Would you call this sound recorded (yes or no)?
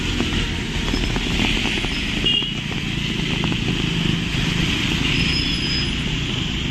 yes